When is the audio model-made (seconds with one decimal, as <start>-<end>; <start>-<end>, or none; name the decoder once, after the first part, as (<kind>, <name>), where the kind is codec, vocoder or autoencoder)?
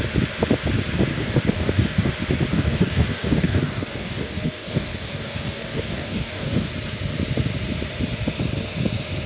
1.1-2.1 (codec, DAC); 2.5-6.7